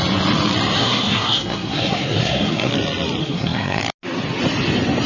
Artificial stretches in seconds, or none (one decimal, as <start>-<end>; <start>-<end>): 0.8-2.7; 3.2-3.8